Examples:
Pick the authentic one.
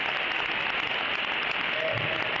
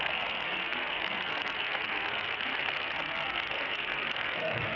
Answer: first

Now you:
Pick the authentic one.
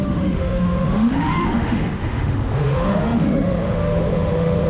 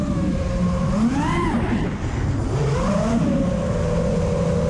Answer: second